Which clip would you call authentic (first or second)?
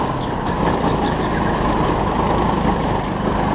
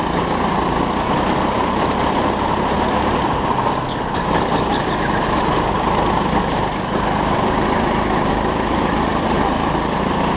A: first